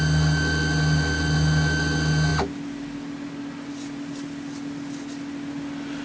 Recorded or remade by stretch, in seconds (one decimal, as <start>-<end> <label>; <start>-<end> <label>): 0.0-6.0 recorded